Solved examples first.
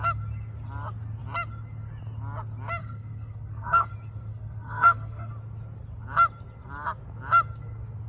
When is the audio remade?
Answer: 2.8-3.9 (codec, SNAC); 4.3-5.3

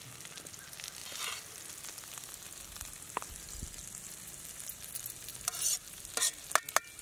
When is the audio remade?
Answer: none

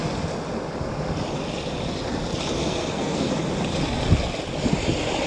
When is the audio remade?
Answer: 2.6-3.3 (codec, SNAC)

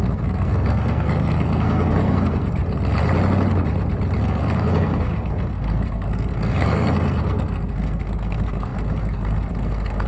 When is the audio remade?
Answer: 0.0-2.6 (codec, SNAC); 4.2-10.1

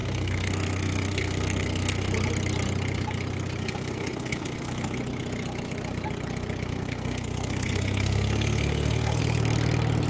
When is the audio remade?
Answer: 0.0-2.1 (codec, SNAC); 3.6-5.0; 6.7-9.2

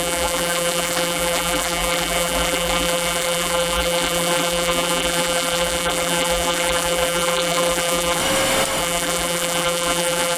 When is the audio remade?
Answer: 0.0-8.2 (vocoder, BigVGAN v2); 8.8-10.4

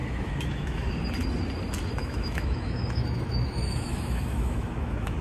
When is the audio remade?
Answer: 0.0-0.9 (autoencoder, DAC-VAE); 2.0-5.2